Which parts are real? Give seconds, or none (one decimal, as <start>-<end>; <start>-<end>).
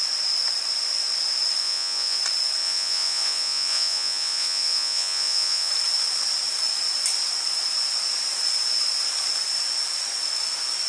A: 0.0-1.6; 2.2-2.6; 5.7-10.9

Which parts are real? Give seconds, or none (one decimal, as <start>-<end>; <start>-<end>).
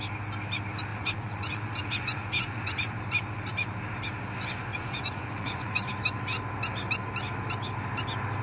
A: 0.0-0.9; 3.0-4.7; 5.9-8.4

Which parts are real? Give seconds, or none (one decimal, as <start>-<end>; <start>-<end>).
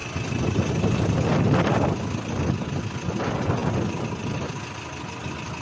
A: 0.0-5.6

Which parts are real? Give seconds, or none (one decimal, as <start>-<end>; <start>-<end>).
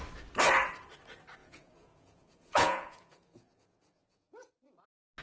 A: 0.0-1.4; 4.5-5.2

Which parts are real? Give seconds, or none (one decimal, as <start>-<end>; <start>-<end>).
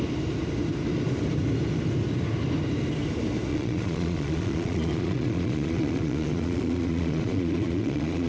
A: 0.0-3.5